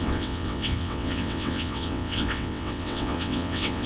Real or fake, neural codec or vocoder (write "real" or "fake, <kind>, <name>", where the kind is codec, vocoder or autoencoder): fake, vocoder, WaveNeXt